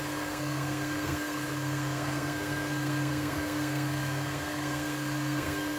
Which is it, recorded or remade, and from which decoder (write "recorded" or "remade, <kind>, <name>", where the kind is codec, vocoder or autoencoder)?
remade, codec, SNAC